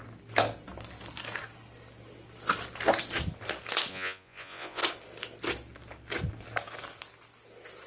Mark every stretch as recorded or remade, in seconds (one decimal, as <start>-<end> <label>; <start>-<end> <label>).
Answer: 0.0-3.9 recorded; 3.9-4.8 remade; 4.8-7.9 recorded